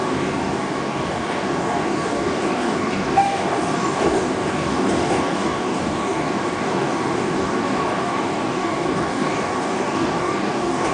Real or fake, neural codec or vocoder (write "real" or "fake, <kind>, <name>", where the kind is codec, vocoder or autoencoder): fake, codec, DAC